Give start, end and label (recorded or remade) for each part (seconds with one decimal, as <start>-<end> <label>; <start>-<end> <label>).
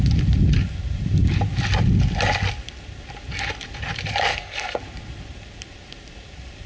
0.0-4.3 recorded; 4.3-4.8 remade; 4.8-6.7 recorded